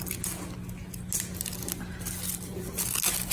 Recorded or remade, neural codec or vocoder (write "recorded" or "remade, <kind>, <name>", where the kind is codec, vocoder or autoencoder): recorded